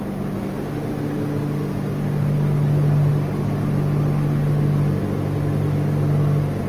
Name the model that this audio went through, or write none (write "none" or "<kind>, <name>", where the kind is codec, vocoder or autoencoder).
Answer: none